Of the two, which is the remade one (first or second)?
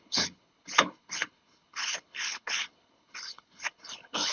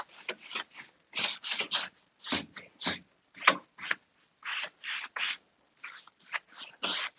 first